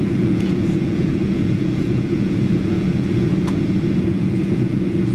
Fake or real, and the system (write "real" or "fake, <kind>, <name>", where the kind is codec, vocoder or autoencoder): fake, vocoder, Vocos